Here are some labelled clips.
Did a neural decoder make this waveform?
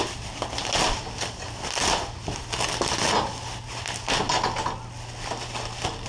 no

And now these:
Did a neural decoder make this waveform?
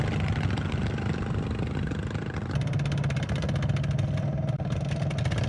no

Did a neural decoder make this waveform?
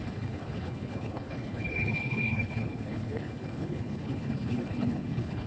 yes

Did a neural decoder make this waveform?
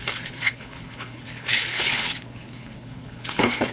yes